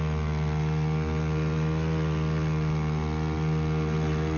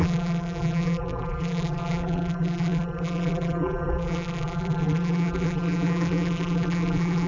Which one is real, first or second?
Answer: first